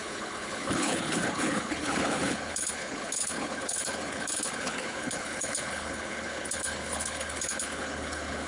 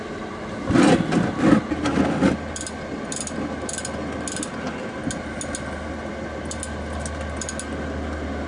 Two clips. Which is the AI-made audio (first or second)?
first